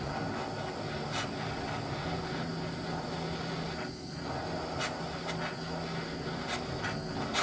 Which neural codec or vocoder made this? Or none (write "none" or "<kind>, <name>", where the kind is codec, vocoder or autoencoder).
none